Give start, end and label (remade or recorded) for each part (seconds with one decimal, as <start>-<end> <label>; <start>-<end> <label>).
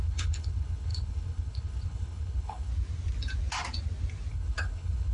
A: 0.0-2.7 remade; 2.7-4.3 recorded; 4.3-5.1 remade